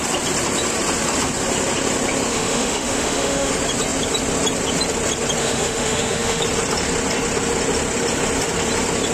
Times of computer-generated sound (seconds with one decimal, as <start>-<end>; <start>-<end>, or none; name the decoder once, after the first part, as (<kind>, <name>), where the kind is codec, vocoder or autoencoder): 2.3-3.5 (autoencoder, DAC-VAE); 5.4-6.4